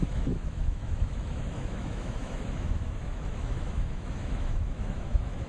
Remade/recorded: remade